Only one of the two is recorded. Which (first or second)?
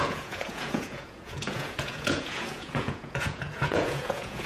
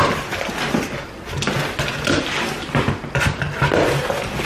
second